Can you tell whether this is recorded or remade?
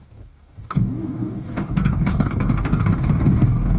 remade